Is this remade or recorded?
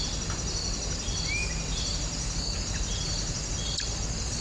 recorded